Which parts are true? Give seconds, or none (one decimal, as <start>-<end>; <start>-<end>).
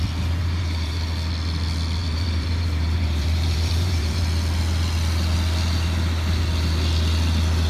0.0-0.4; 1.0-2.0; 4.2-7.7